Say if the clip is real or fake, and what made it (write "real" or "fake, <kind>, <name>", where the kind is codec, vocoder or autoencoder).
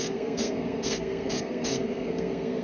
fake, codec, SNAC